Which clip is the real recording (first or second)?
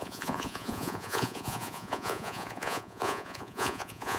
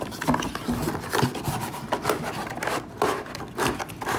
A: second